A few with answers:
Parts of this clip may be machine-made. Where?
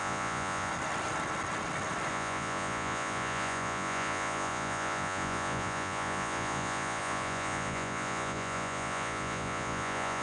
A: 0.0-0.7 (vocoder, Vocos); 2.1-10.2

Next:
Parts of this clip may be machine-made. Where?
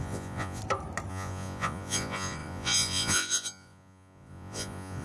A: 0.0-0.6 (vocoder, Vocos); 1.1-5.0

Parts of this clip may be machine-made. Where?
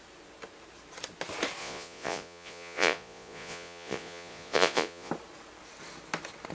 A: 1.6-5.1 (vocoder, Vocos)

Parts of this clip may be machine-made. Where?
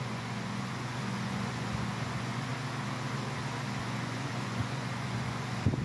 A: 0.0-2.5 (vocoder, Vocos); 3.8-5.8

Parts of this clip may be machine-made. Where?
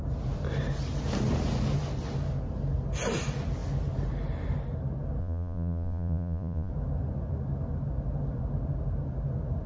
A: 5.2-6.7 (vocoder, Vocos)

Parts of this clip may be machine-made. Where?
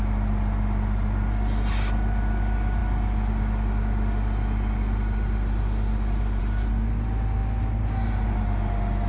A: none